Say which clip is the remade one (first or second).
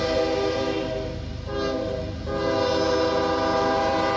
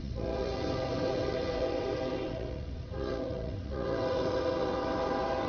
second